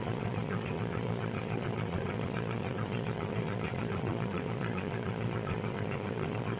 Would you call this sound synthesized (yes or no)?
yes